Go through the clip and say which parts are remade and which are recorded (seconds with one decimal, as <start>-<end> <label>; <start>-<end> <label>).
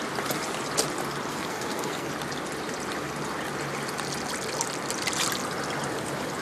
0.0-1.3 recorded; 1.3-2.1 remade; 2.1-6.4 recorded